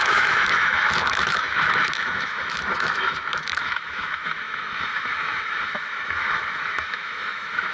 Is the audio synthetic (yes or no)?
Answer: yes